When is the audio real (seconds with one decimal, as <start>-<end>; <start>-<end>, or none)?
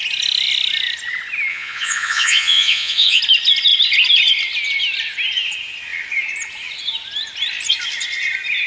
0.0-1.5; 3.2-8.7